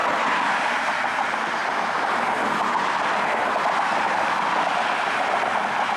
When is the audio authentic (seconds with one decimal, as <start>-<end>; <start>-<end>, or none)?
0.0-6.0